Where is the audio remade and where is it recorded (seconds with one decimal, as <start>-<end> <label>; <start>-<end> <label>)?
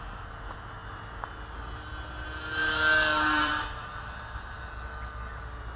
0.0-2.6 recorded; 2.6-4.7 remade; 4.7-5.8 recorded